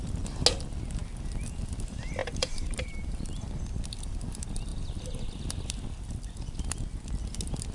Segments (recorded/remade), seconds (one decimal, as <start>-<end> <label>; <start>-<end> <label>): 0.0-2.2 recorded; 2.2-3.6 remade; 3.6-7.7 recorded